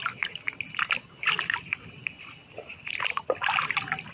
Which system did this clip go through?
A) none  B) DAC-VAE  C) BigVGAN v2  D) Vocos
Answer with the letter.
A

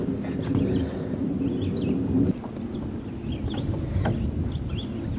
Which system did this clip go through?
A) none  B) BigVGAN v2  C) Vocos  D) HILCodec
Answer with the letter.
A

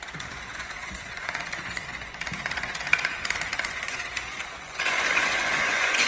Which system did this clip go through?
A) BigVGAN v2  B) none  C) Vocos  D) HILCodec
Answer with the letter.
C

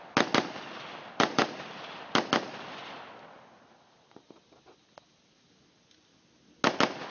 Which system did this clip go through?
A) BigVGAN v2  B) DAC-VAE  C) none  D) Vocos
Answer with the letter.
C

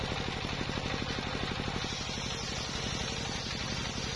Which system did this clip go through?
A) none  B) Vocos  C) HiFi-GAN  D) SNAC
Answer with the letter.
A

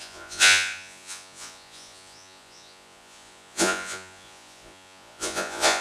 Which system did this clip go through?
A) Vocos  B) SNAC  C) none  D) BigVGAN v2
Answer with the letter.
A